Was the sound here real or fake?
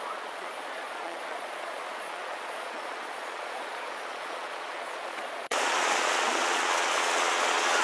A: fake